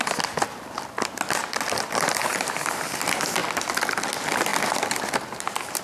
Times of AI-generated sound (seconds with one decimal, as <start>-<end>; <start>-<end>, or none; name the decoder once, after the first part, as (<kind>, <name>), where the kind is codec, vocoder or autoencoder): 2.2-2.8 (vocoder, BigVGAN v2)